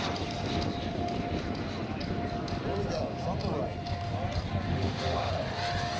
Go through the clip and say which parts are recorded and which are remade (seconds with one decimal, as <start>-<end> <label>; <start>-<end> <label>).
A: 0.0-4.7 recorded; 4.7-5.3 remade; 5.3-6.0 recorded